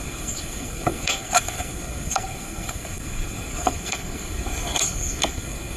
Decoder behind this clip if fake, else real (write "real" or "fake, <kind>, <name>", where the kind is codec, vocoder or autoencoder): fake, codec, SNAC